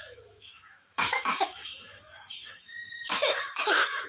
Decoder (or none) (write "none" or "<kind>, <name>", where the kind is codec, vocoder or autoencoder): autoencoder, DAC-VAE